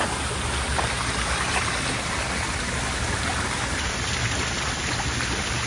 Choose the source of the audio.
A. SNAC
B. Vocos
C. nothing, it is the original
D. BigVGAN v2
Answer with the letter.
C